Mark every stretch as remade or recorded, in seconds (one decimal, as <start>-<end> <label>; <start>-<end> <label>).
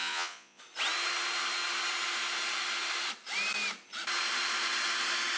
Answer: 0.0-0.6 remade; 0.6-5.4 recorded